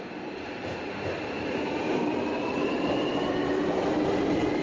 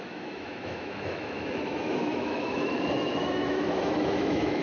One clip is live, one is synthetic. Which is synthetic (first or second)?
second